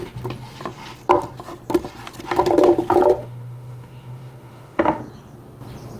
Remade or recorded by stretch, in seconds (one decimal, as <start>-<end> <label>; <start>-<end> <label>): 0.0-3.2 recorded; 3.2-5.0 remade; 5.0-6.0 recorded